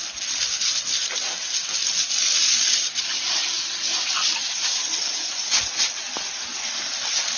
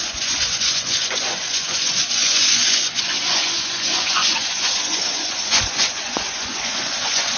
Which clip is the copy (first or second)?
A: second